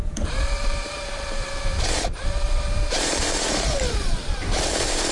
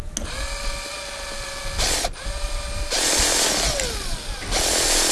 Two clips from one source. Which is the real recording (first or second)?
second